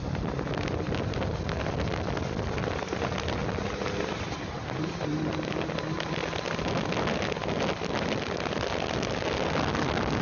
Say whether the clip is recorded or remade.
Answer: recorded